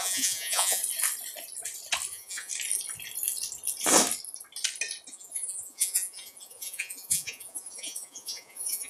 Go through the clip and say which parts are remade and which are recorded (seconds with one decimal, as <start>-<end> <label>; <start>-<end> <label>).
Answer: 0.0-0.8 remade; 0.8-2.1 recorded; 2.1-2.5 remade; 2.5-5.1 recorded; 5.1-8.9 remade